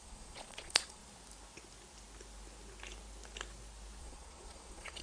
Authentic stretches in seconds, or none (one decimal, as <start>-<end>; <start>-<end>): 1.0-4.0